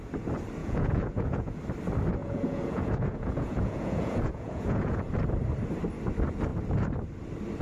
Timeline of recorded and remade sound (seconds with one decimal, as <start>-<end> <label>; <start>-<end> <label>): 0.0-0.6 recorded; 0.6-1.6 remade; 1.6-2.2 recorded; 2.2-5.1 remade; 5.1-7.6 recorded